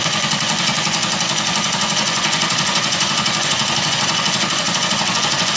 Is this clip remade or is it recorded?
remade